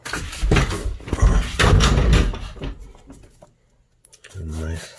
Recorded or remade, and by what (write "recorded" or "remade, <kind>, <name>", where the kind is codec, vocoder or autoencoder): recorded